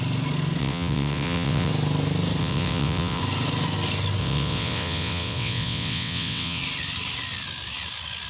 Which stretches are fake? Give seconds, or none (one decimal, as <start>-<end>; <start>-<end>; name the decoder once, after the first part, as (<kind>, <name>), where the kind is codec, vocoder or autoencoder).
0.6-1.7 (vocoder, WaveNeXt); 2.4-3.2; 4.2-6.6